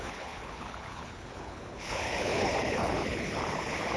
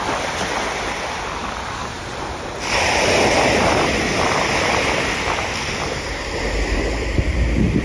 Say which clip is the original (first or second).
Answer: second